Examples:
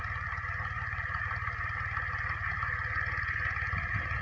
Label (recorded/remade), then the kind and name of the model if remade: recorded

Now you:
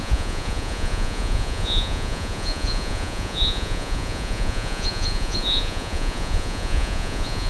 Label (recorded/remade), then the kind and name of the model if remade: remade, vocoder, Vocos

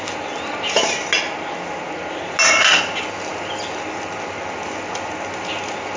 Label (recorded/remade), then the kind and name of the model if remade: recorded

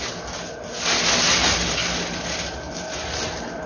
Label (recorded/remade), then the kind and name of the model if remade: recorded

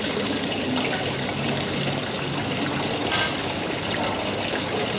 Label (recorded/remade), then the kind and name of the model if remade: recorded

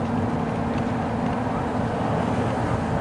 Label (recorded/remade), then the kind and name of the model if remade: recorded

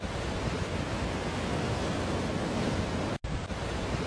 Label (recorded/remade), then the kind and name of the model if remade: recorded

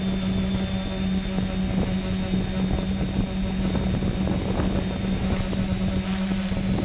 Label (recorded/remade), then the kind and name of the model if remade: recorded